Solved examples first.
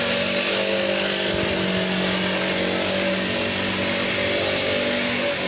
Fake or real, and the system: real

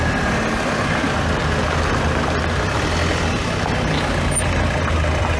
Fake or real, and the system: real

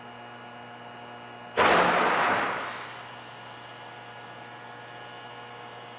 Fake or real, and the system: real